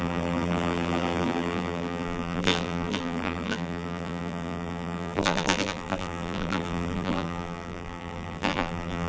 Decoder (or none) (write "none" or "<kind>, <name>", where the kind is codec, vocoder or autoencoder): vocoder, BigVGAN v2